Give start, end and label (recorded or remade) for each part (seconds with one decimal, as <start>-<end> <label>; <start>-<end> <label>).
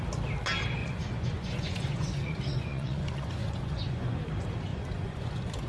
0.0-0.8 recorded; 0.8-4.2 remade; 4.2-4.7 recorded; 4.7-5.7 remade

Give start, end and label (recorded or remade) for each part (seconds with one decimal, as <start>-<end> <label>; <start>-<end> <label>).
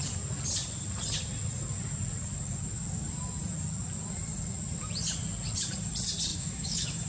0.0-6.3 recorded; 6.3-7.1 remade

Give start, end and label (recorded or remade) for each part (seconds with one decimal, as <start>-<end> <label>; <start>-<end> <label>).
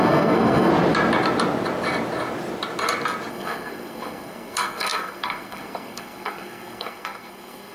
0.0-0.7 remade; 0.7-3.3 recorded; 3.3-7.7 remade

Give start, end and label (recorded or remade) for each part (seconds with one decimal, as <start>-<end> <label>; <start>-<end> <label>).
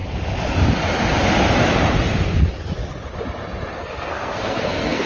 0.0-3.7 recorded; 3.7-5.1 remade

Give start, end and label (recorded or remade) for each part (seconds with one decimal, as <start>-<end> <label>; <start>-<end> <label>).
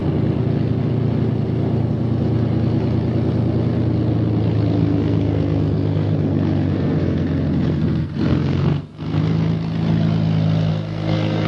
0.0-4.8 recorded; 4.8-9.2 remade; 9.2-10.7 recorded; 10.7-11.5 remade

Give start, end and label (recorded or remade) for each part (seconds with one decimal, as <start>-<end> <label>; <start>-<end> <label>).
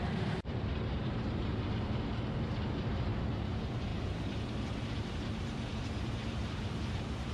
0.0-2.1 remade; 2.1-2.9 recorded; 2.9-7.3 remade